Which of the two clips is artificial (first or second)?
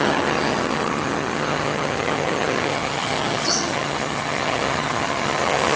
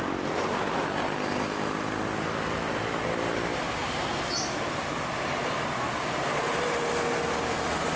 first